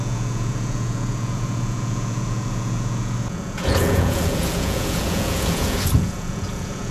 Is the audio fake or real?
fake